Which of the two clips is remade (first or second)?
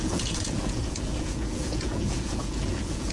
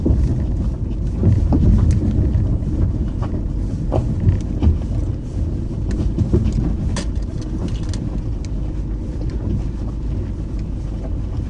first